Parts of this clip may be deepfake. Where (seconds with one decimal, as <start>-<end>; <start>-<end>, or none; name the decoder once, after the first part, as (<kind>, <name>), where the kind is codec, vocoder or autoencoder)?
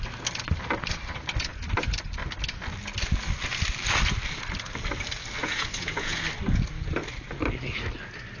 5.4-6.2 (vocoder, Vocos)